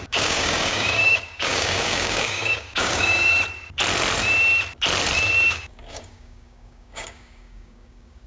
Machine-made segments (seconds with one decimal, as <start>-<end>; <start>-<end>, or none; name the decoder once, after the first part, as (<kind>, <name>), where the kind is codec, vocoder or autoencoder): 0.0-3.3 (codec, DAC); 5.5-8.3